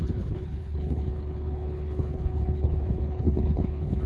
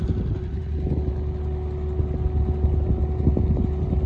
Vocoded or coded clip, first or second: first